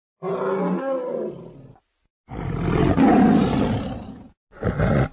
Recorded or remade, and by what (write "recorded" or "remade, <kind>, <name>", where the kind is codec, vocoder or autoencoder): recorded